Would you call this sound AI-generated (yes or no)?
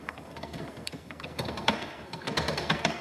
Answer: yes